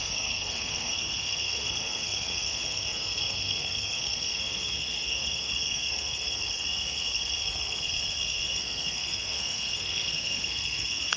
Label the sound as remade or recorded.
remade